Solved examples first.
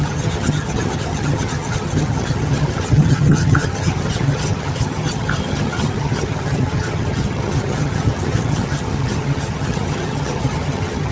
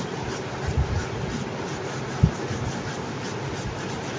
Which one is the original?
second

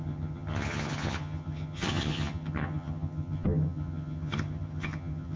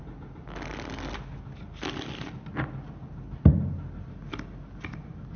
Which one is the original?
second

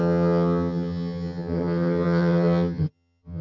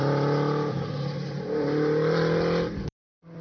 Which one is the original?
second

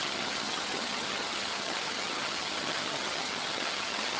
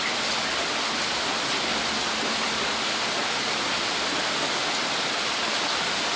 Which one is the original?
second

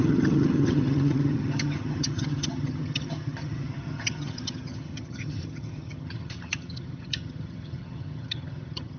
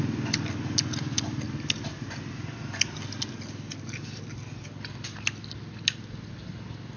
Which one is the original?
second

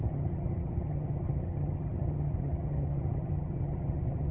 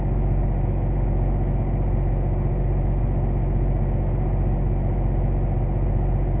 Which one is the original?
second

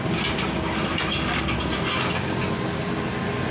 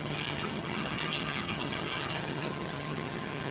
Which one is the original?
first